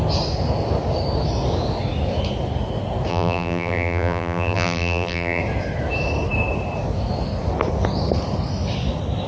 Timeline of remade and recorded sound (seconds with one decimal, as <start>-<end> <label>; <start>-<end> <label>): 0.0-3.1 recorded; 3.1-5.4 remade; 5.4-9.3 recorded